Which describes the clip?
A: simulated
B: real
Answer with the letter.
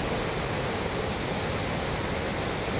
B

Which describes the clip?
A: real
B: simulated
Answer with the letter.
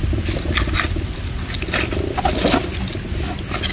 A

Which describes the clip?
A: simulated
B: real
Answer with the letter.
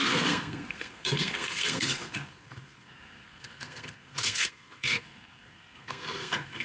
A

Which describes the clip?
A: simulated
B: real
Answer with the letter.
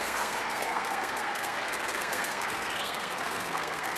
A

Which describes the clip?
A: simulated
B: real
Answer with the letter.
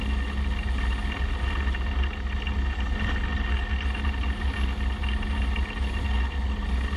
B